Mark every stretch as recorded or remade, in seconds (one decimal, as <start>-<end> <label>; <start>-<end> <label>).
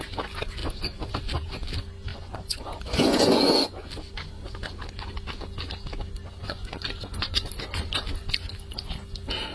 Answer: 0.0-2.1 recorded; 2.1-3.9 remade; 3.9-6.4 recorded; 6.4-7.5 remade; 7.5-9.5 recorded